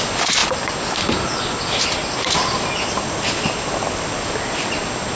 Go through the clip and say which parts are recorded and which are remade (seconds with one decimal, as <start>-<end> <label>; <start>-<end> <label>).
0.0-5.1 recorded

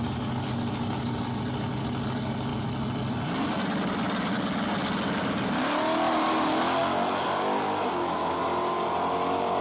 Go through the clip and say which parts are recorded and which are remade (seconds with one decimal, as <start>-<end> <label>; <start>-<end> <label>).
0.0-9.6 recorded

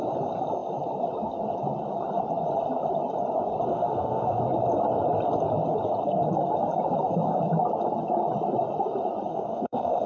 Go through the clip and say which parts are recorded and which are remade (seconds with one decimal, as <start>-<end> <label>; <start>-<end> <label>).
0.0-3.7 recorded; 3.7-4.4 remade; 4.4-9.3 recorded; 9.3-10.1 remade

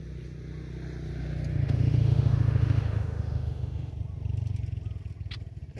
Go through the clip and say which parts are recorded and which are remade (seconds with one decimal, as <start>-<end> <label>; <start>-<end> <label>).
0.0-1.5 recorded; 1.5-3.9 remade; 3.9-5.8 recorded

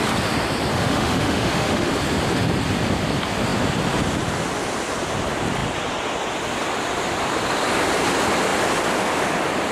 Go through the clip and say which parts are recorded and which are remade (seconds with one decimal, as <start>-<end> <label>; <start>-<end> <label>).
0.0-0.7 recorded; 0.7-1.9 remade; 1.9-9.7 recorded